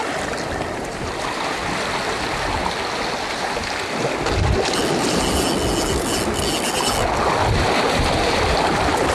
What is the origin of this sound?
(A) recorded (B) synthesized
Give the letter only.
A